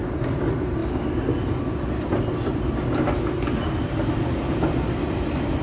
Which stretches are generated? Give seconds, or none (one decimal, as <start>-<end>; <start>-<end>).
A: none